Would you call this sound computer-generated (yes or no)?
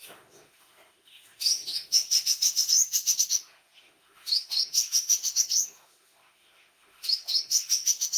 yes